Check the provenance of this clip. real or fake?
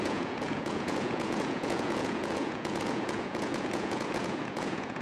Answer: fake